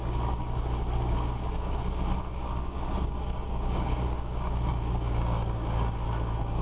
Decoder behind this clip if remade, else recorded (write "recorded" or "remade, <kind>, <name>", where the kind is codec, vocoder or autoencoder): remade, codec, DAC